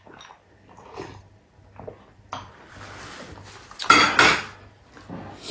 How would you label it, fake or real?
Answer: real